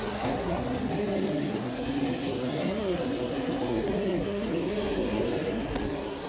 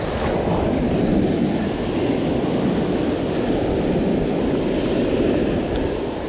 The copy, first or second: first